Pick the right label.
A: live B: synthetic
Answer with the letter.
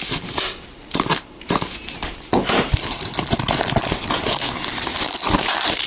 B